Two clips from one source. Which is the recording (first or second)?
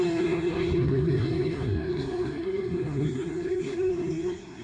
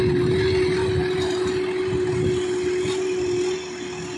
second